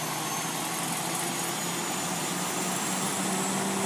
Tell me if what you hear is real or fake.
real